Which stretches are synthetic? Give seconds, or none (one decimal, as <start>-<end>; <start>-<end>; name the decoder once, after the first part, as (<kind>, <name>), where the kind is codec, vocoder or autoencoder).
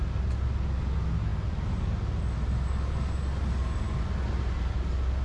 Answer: none